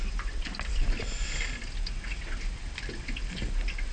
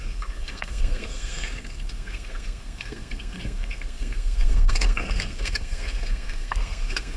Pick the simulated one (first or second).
second